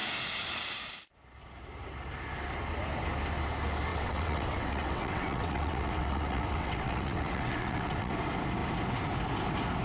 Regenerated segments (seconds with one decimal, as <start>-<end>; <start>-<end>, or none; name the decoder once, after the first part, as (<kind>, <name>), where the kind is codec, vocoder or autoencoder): 3.9-8.1 (vocoder, WaveNeXt)